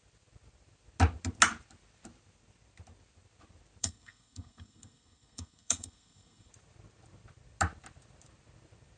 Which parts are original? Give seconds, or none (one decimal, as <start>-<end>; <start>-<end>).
0.0-3.8; 6.5-9.0